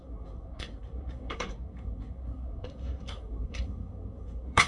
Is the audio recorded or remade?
remade